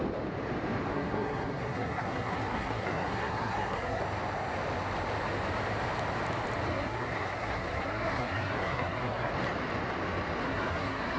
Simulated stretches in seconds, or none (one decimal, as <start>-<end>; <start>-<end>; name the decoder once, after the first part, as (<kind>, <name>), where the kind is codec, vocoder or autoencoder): 0.9-4.0 (codec, SNAC); 6.7-9.3; 10.4-11.2